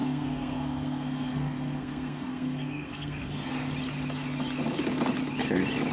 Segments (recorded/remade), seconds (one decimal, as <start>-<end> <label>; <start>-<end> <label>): 0.0-3.5 remade; 3.5-5.9 recorded